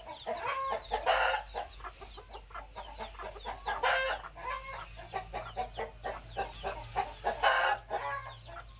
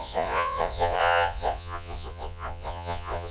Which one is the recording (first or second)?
first